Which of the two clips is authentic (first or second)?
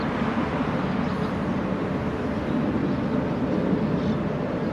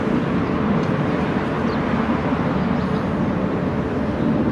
second